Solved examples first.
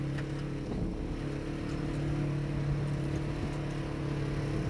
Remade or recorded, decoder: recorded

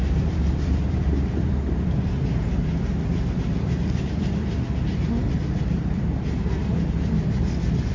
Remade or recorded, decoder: remade, vocoder, BigVGAN v2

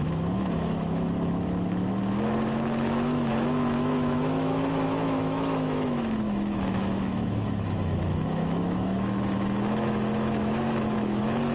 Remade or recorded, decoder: remade, autoencoder, DAC-VAE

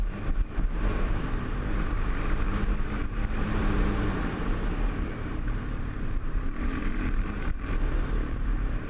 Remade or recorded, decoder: remade, vocoder, BigVGAN v2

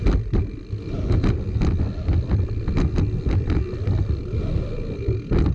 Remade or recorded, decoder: recorded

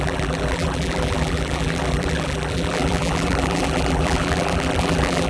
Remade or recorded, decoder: remade, vocoder, BigVGAN v2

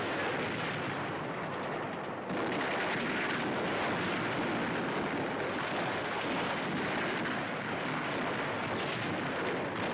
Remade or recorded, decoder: recorded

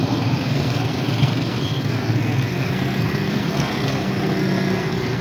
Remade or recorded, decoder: remade, codec, SNAC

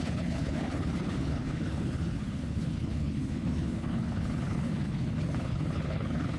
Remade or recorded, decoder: remade, codec, HILCodec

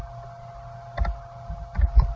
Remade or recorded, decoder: recorded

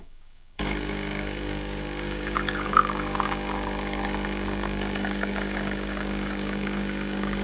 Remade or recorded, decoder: remade, codec, DAC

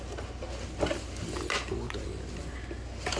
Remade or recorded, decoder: recorded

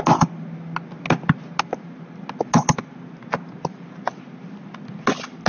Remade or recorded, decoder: recorded